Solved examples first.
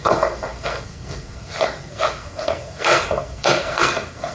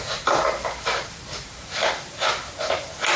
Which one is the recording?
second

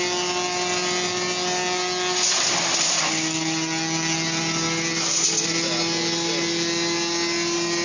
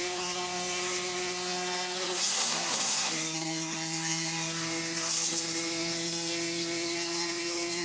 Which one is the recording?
first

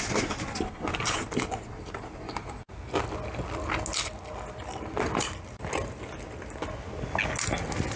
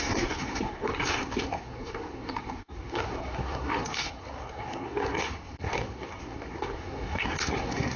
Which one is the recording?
first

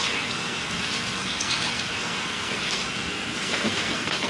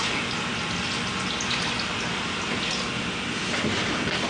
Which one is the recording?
second